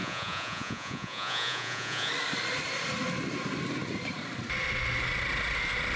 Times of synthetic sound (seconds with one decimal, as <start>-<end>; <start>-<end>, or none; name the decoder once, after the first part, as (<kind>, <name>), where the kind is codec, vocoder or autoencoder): 0.0-2.1 (vocoder, Vocos)